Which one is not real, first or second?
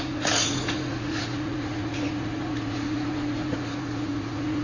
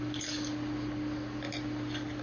first